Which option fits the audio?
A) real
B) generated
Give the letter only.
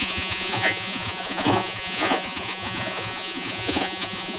B